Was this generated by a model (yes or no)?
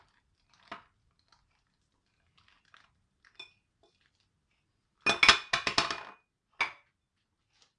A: no